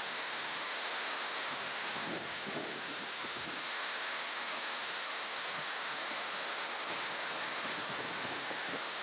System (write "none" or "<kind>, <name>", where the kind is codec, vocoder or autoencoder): autoencoder, DAC-VAE